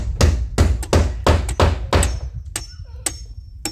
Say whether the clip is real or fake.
real